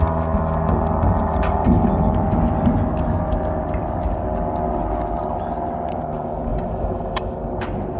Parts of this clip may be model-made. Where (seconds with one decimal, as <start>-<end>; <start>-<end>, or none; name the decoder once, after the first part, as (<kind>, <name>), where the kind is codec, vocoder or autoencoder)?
6.5-8.0 (vocoder, BigVGAN v2)